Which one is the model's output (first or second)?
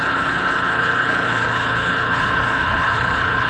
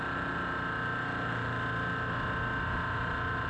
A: first